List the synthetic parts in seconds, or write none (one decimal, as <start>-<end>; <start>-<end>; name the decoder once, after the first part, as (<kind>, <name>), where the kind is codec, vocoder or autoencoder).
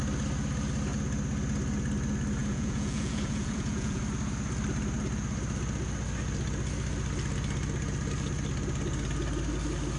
2.4-4.0 (vocoder, Vocos)